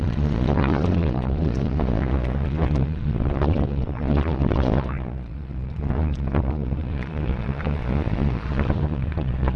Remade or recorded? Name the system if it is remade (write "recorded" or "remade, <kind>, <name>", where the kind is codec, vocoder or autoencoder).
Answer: remade, vocoder, Vocos